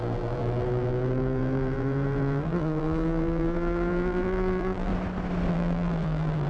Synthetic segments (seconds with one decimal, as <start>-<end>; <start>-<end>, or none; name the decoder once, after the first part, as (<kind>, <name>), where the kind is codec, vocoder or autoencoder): 0.0-4.9 (vocoder, BigVGAN v2); 5.5-6.5